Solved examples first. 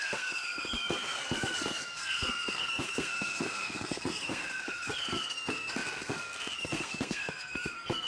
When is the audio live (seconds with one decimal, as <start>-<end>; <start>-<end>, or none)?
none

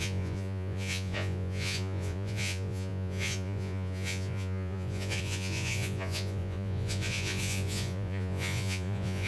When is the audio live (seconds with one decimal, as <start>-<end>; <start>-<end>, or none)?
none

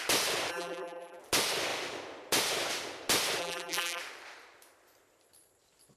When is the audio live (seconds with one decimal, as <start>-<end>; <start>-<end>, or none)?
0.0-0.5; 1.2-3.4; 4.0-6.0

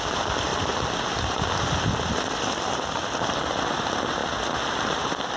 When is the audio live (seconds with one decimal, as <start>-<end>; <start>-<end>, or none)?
0.0-5.4